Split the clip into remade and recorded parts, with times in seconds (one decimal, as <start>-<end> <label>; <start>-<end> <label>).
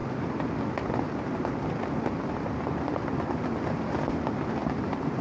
0.0-4.6 recorded; 4.6-5.2 remade